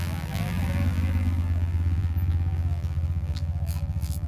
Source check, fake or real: fake